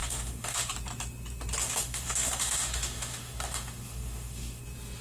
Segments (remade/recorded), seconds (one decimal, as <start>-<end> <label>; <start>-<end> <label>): 0.0-0.7 remade; 0.7-1.6 recorded; 1.6-4.6 remade; 4.6-5.0 recorded